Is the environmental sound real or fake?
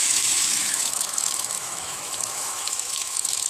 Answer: fake